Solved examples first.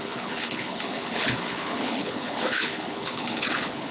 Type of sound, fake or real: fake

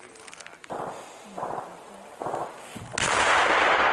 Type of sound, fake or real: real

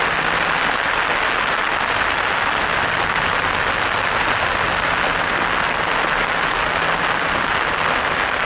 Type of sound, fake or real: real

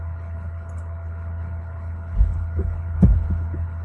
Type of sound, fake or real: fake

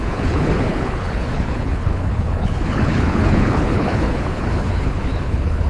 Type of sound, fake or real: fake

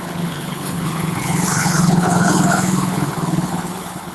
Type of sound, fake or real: fake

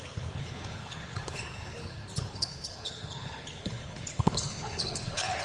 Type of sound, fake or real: fake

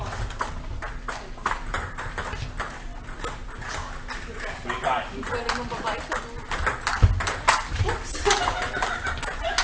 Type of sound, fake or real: real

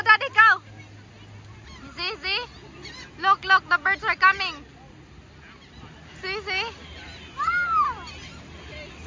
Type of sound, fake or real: real